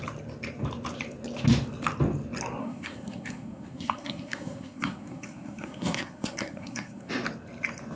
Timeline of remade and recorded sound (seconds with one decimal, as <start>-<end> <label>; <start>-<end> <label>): 0.0-2.6 recorded; 2.6-7.1 remade; 7.1-8.0 recorded